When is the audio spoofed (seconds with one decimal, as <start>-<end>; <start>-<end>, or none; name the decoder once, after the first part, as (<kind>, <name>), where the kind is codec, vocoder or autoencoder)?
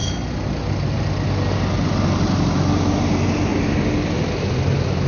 none